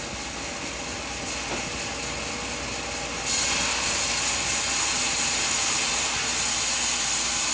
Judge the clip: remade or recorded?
recorded